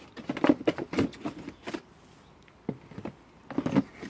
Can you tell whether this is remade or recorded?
recorded